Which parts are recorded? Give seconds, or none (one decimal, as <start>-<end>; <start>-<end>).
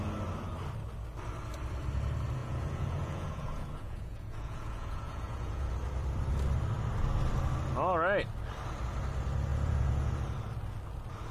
0.0-2.4; 5.7-9.5; 10.1-11.3